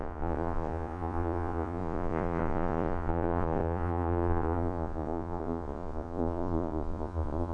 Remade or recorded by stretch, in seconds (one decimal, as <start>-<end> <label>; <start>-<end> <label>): 0.0-7.5 remade